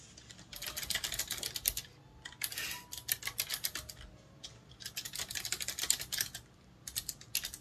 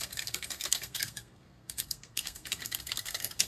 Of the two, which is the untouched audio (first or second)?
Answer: first